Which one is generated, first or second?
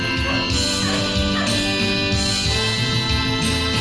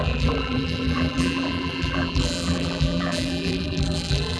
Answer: second